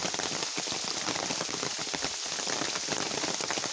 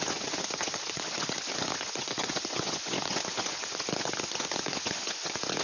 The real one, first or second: first